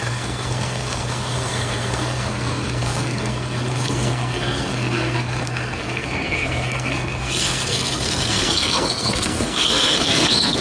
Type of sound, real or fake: fake